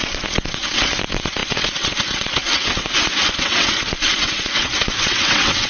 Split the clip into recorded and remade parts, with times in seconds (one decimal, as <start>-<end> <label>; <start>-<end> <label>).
0.0-5.7 remade